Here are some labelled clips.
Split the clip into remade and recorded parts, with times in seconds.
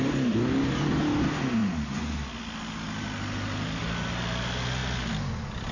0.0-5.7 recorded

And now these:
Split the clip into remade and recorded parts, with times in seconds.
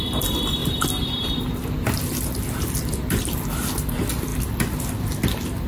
0.0-5.7 recorded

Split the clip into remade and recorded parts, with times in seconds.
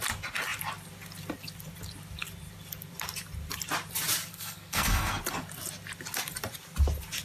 0.0-4.3 recorded; 4.3-5.2 remade; 5.2-7.2 recorded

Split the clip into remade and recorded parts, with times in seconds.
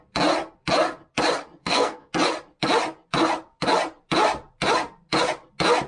0.0-1.6 recorded; 1.6-2.1 remade; 2.1-5.9 recorded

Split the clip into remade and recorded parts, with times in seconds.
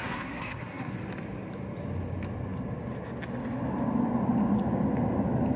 0.0-0.9 remade; 0.9-5.6 recorded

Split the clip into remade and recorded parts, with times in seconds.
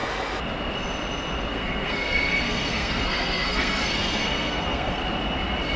0.0-1.5 recorded; 1.5-5.0 remade; 5.0-5.8 recorded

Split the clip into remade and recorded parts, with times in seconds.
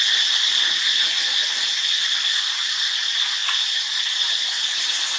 0.0-5.2 recorded